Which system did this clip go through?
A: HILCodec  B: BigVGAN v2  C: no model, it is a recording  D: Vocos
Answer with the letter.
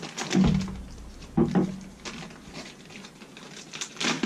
C